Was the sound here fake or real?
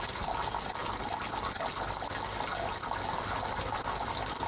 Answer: real